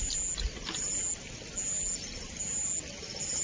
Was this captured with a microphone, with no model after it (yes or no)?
yes